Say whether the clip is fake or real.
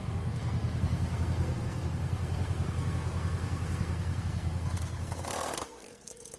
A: fake